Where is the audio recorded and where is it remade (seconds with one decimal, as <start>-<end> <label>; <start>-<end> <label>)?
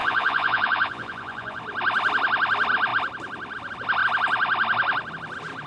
0.0-1.6 remade; 1.6-5.7 recorded